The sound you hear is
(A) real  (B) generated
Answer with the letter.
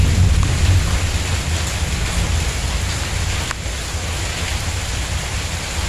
A